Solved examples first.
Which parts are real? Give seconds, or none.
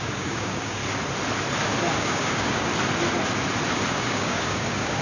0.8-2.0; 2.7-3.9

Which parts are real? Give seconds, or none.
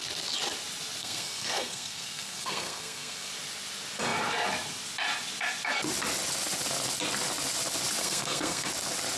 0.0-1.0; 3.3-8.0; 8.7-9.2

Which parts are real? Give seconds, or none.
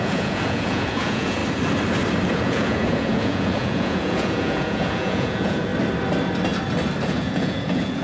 1.4-2.3; 5.7-7.0